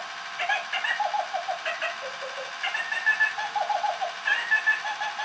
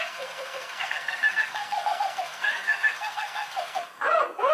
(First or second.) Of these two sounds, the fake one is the second